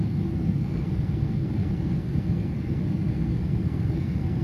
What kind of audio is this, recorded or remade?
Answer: remade